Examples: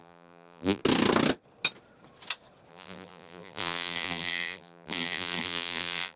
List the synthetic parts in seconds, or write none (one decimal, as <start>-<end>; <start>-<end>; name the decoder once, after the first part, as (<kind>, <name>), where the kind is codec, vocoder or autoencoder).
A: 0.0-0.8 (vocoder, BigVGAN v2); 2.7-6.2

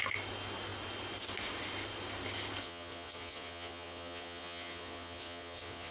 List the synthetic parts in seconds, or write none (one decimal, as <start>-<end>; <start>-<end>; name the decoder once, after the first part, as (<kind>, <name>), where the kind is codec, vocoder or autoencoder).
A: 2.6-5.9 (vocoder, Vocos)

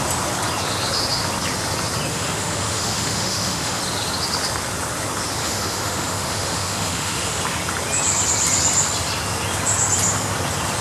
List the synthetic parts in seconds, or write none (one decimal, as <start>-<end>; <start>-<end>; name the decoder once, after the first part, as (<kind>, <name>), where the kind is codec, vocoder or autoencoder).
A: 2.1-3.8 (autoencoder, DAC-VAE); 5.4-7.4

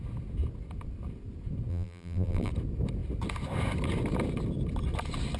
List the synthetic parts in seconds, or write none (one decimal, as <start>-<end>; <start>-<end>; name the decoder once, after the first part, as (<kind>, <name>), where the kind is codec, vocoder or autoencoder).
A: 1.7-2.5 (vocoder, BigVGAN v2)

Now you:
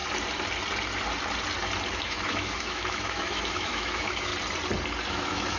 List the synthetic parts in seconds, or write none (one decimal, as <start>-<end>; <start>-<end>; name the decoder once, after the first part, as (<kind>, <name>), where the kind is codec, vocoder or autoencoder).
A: 1.9-4.3 (autoencoder, DAC-VAE); 5.1-5.6